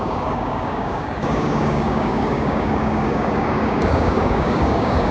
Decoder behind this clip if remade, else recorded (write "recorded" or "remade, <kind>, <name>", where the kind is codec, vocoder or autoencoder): remade, codec, DAC